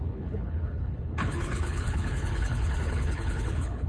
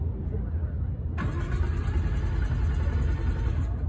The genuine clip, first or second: second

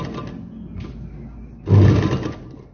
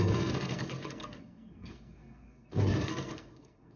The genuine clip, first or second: first